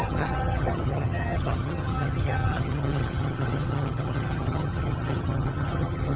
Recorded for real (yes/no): no